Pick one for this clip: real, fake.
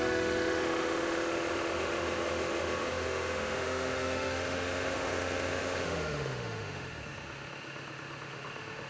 fake